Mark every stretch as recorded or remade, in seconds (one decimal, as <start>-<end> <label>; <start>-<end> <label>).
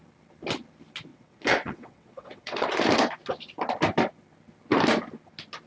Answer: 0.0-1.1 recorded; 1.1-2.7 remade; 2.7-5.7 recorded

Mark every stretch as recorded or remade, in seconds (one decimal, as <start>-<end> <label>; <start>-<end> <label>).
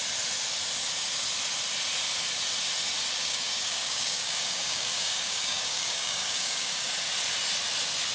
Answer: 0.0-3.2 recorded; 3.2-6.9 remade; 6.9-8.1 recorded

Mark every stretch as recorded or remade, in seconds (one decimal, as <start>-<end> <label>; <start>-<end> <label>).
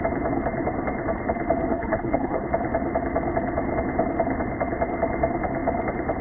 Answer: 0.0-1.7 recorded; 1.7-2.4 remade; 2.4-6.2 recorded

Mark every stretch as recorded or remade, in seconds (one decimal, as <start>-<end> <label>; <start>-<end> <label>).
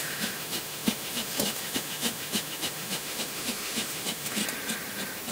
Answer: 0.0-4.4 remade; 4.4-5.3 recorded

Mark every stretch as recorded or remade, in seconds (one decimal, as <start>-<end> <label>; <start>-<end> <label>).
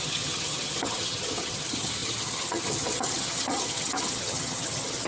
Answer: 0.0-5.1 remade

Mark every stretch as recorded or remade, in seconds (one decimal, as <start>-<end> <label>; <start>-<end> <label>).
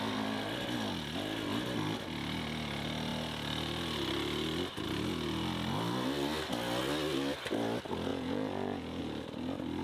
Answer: 0.0-8.1 recorded; 8.1-9.0 remade; 9.0-9.8 recorded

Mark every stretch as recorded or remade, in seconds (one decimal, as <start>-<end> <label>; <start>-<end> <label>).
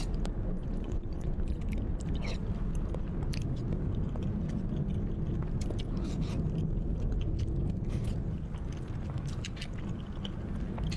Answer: 0.0-0.5 recorded; 0.5-1.6 remade; 1.6-11.0 recorded